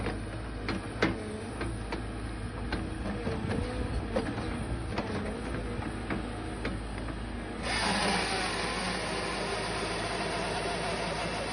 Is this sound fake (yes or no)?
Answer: no